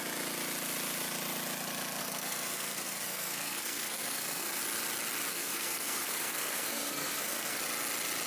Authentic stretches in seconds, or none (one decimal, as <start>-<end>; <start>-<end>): 0.0-2.0; 4.6-5.3; 7.6-8.3